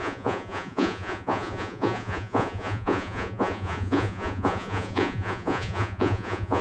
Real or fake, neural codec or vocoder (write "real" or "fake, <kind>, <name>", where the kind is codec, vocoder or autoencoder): fake, vocoder, Vocos